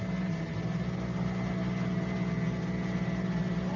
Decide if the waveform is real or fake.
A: real